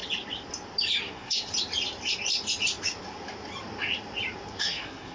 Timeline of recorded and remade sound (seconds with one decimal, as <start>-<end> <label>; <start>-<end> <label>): 0.0-1.0 recorded; 1.0-1.5 remade; 1.5-4.6 recorded; 4.6-5.1 remade